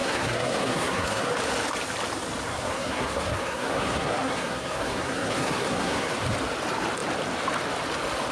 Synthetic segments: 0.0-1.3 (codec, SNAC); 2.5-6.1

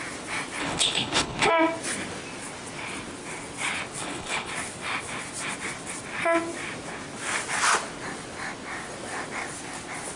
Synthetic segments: 0.6-1.5 (codec, HILCodec); 4.0-4.5

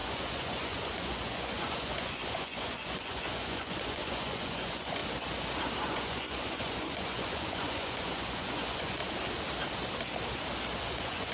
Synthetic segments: 0.0-5.0 (vocoder, Vocos); 5.8-9.0; 10.8-11.3

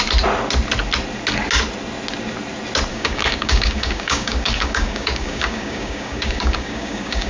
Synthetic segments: 2.9-7.3 (codec, DAC)

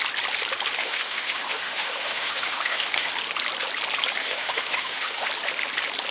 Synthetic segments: 0.8-3.1 (autoencoder, DAC-VAE); 4.2-5.3

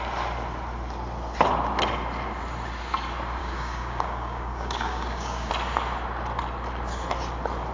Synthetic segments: 3.4-5.5 (codec, DAC)

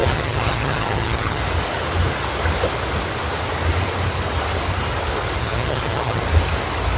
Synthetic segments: 0.0-1.4 (vocoder, HiFi-GAN); 5.4-6.2